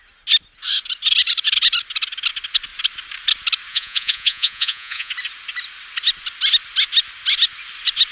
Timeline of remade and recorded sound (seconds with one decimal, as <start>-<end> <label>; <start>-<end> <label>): 0.0-3.7 recorded; 3.7-5.1 remade; 5.1-8.1 recorded